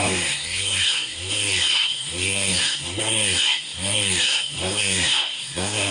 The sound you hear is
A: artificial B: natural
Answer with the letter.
A